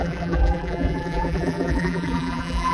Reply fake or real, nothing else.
fake